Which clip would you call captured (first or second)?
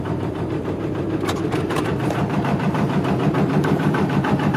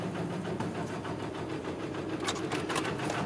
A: second